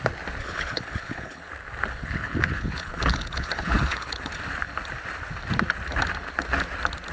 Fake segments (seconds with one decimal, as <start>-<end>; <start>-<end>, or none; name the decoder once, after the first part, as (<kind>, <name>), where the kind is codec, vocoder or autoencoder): 0.4-1.5 (codec, HILCodec); 2.0-4.3